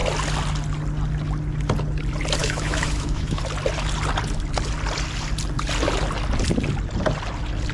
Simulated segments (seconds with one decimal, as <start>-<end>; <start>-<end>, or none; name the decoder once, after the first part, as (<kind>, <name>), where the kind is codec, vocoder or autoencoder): 2.4-3.4 (autoencoder, DAC-VAE)